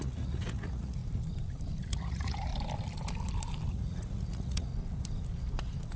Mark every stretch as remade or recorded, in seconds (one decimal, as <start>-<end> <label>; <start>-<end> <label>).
0.0-1.0 remade; 1.0-1.8 recorded; 1.8-2.5 remade; 2.5-3.7 recorded; 3.7-4.7 remade; 4.7-6.0 recorded